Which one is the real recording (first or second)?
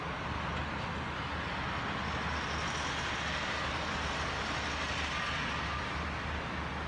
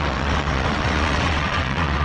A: first